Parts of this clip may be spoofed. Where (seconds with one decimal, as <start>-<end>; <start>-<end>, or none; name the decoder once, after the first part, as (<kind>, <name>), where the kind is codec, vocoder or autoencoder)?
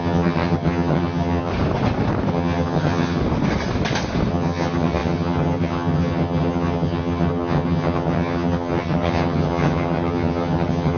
0.0-1.5 (vocoder, HiFi-GAN); 2.3-3.2; 4.3-11.0